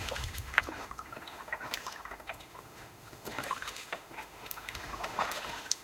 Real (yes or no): no